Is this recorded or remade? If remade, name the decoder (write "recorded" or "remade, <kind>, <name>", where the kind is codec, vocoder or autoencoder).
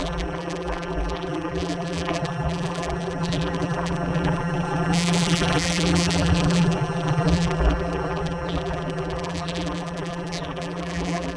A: remade, vocoder, BigVGAN v2